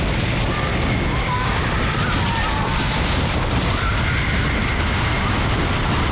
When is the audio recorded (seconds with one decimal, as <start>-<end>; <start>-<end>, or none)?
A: 0.0-0.7; 1.6-6.1